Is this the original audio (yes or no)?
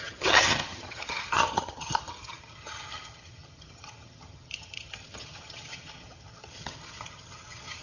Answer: no